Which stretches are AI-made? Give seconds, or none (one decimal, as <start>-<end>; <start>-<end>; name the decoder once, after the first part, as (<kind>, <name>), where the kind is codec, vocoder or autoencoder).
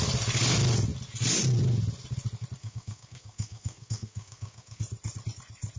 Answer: 2.6-4.8 (codec, SNAC)